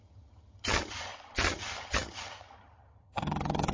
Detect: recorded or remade remade